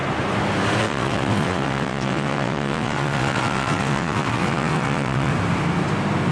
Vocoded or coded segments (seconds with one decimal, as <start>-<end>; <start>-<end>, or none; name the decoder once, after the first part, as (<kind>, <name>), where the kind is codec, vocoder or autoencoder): 0.8-5.3 (vocoder, WaveNeXt)